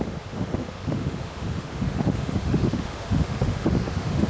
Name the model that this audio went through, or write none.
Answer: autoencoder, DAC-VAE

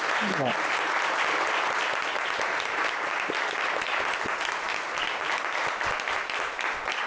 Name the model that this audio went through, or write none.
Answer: none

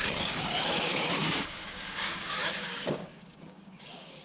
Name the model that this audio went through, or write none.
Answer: codec, DAC